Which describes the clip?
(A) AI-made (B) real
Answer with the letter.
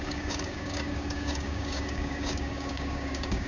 A